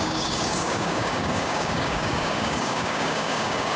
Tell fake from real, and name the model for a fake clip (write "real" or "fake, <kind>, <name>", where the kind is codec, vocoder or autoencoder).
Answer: fake, codec, DAC